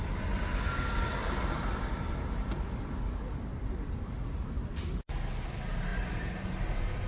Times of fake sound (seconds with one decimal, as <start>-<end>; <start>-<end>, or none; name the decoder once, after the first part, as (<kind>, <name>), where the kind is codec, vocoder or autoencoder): 1.2-1.9 (vocoder, BigVGAN v2); 5.9-7.1